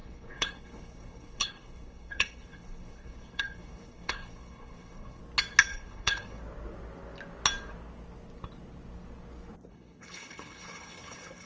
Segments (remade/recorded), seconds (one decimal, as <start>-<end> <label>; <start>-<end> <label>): 0.0-5.2 remade; 5.2-5.7 recorded; 5.7-6.4 remade; 6.4-9.7 recorded; 9.7-11.5 remade